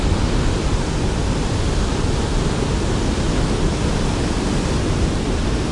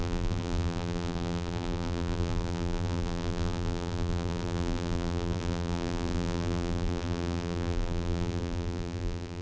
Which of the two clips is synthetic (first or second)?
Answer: second